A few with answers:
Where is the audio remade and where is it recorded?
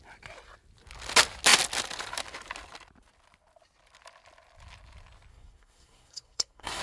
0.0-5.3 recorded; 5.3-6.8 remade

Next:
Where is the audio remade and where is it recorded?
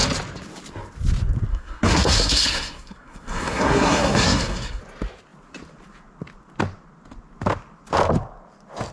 0.0-1.5 recorded; 1.5-4.8 remade; 4.8-8.9 recorded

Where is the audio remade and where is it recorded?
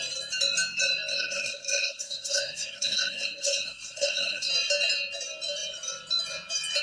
0.0-1.1 recorded; 1.1-4.5 remade; 4.5-6.8 recorded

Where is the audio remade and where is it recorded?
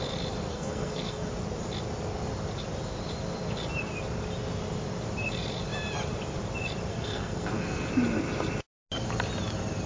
0.0-0.5 recorded; 0.5-1.3 remade; 1.3-6.9 recorded; 6.9-7.9 remade; 7.9-9.9 recorded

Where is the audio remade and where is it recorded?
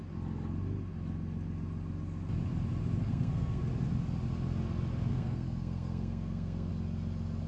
0.0-3.0 recorded; 3.0-3.6 remade; 3.6-5.1 recorded; 5.1-6.7 remade; 6.7-7.5 recorded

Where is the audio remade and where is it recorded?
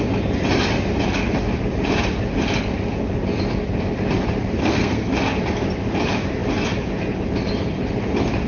0.0-4.6 recorded; 4.6-5.1 remade; 5.1-8.5 recorded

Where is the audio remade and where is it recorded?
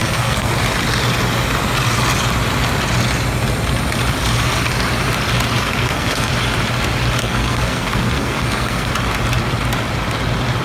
0.0-0.5 remade; 0.5-5.6 recorded; 5.6-6.3 remade; 6.3-7.2 recorded; 7.2-8.9 remade; 8.9-10.6 recorded